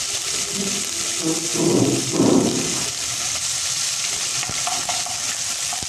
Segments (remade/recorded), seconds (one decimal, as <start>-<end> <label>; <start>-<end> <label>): 0.0-5.9 recorded